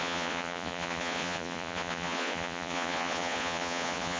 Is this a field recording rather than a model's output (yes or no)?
no